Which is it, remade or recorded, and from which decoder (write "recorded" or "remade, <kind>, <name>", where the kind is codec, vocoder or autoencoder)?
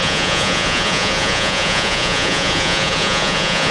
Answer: remade, vocoder, Vocos